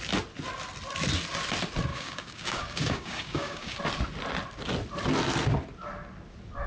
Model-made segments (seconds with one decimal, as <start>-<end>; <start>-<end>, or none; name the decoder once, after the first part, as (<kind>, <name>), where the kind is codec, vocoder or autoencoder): 1.9-3.8 (codec, DAC)